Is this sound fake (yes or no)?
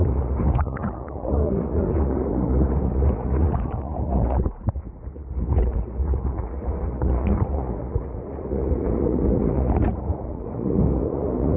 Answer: yes